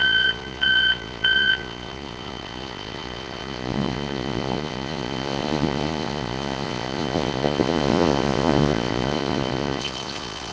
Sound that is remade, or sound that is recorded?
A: remade